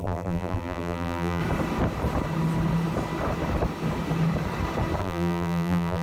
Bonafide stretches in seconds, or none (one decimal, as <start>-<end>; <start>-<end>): 1.4-5.0